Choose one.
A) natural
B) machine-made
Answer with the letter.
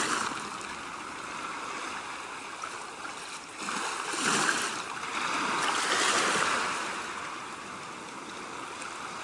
A